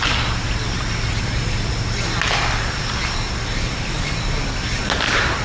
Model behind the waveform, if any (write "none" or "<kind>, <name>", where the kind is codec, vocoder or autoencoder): none